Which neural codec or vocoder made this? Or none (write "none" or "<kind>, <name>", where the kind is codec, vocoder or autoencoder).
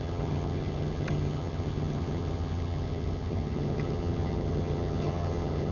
vocoder, HiFi-GAN